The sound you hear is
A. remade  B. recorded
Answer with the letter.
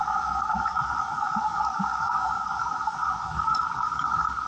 A